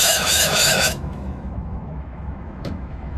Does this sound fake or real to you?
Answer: fake